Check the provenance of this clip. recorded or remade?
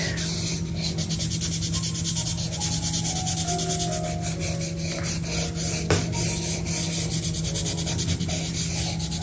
recorded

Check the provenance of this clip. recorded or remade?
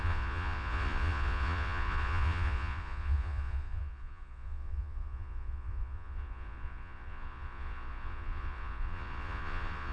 remade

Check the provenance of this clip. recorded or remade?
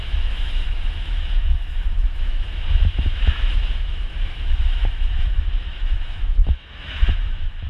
remade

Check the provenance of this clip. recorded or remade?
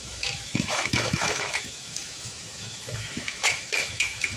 remade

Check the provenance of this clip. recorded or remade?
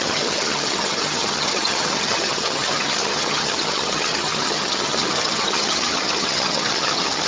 remade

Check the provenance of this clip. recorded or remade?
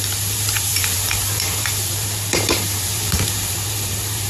remade